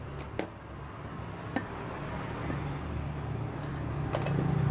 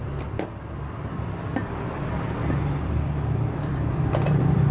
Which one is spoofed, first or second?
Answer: second